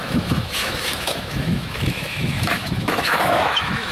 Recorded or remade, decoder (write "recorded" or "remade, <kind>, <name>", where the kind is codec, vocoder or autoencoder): remade, autoencoder, DAC-VAE